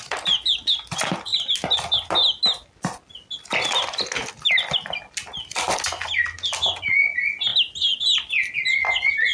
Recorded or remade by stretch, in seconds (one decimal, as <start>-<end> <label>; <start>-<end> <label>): 0.0-9.3 recorded